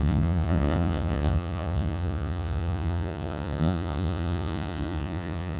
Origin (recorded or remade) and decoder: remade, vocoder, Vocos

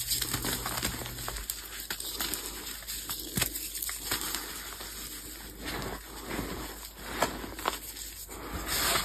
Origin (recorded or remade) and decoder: recorded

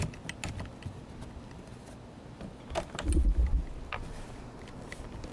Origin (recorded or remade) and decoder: recorded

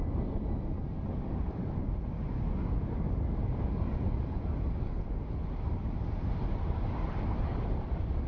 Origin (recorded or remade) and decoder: recorded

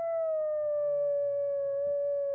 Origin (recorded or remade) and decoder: recorded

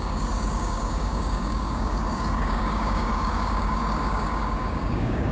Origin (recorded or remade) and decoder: remade, codec, DAC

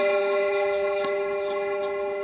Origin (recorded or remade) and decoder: remade, codec, HILCodec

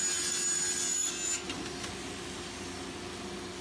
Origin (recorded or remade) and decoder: recorded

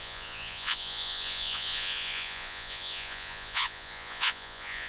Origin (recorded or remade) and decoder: remade, vocoder, Vocos